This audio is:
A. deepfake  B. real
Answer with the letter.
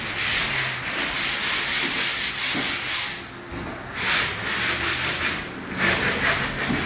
B